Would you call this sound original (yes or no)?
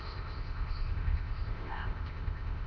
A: no